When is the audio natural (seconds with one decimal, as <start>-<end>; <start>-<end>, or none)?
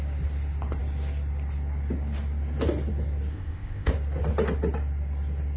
0.0-3.3; 3.9-5.6